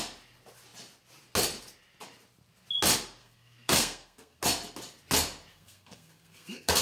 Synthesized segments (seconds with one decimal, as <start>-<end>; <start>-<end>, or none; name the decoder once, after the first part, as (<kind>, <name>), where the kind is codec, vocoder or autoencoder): 3.2-4.4 (codec, SNAC); 5.5-6.8